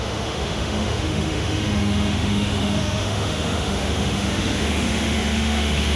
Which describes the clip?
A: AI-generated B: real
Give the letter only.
A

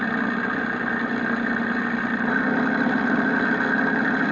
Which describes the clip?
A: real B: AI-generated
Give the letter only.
A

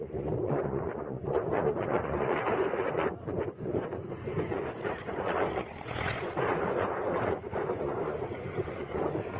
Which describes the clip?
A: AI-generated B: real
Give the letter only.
A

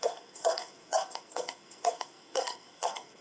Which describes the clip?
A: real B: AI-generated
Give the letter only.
B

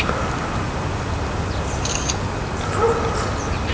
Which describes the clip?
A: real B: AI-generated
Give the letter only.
A